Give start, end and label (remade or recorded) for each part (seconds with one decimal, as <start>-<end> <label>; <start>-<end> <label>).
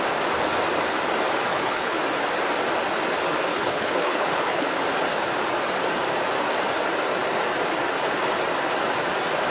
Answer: 0.0-1.5 recorded; 1.5-2.0 remade; 2.0-3.5 recorded; 3.5-4.7 remade; 4.7-9.5 recorded